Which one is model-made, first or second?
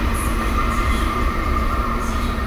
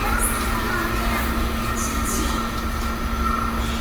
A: first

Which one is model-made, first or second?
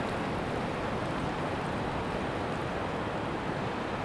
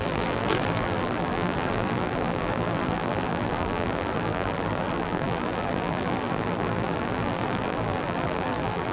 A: second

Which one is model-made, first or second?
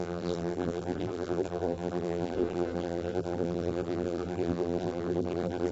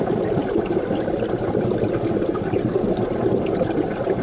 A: first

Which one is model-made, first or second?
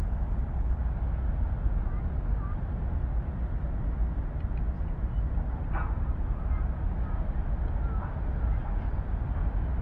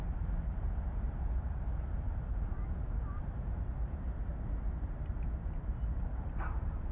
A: second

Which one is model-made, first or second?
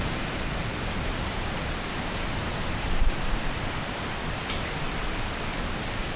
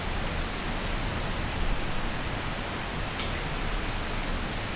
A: first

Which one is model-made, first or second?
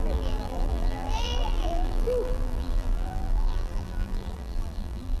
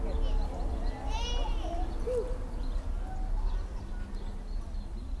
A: first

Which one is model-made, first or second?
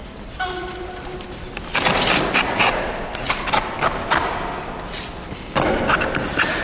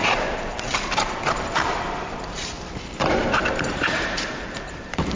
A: second